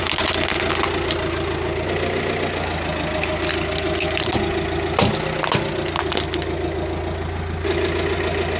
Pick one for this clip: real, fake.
real